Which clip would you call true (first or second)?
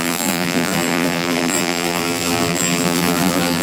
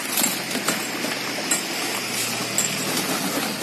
second